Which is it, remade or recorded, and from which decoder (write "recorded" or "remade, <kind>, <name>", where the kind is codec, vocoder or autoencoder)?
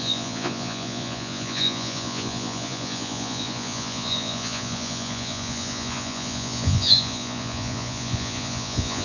remade, vocoder, Vocos